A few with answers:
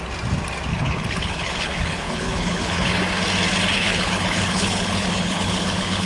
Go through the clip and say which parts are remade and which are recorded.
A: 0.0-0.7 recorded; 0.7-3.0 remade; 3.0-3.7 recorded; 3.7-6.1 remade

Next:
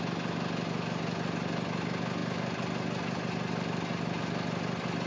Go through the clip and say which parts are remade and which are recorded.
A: 0.0-5.1 recorded

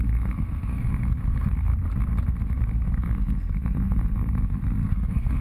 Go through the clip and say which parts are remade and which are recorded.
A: 0.0-1.7 remade; 1.7-2.5 recorded; 2.5-5.4 remade

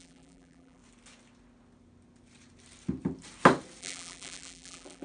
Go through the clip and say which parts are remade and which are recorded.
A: 0.0-0.8 remade; 0.8-3.8 recorded; 3.8-5.0 remade

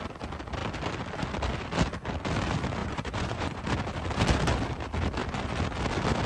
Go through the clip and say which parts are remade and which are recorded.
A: 0.0-2.8 recorded; 2.8-3.6 remade; 3.6-6.3 recorded

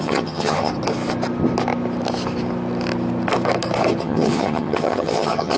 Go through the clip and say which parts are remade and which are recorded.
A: 0.0-0.7 remade; 0.7-4.0 recorded; 4.0-5.6 remade

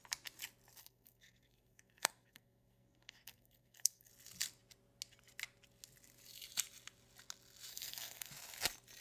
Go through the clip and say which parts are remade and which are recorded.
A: 0.0-0.8 recorded; 0.8-4.1 remade; 4.1-7.7 recorded; 7.7-8.3 remade; 8.3-9.0 recorded

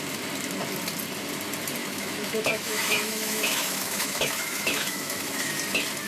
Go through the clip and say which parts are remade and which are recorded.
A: 0.0-1.8 recorded; 1.8-5.5 remade; 5.5-6.1 recorded